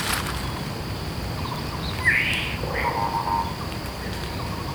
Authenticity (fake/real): real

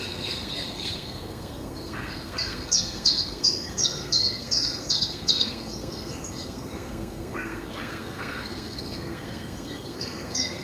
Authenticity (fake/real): fake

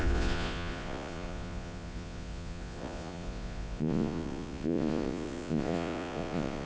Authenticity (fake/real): fake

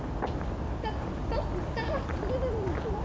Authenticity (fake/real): real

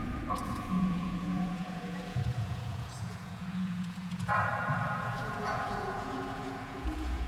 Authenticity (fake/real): fake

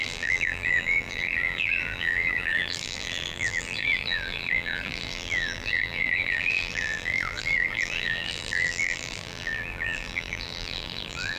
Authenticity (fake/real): fake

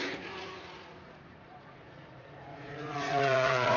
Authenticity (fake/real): fake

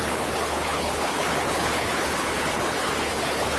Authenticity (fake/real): fake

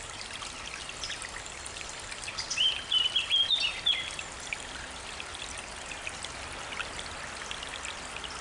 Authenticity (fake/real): real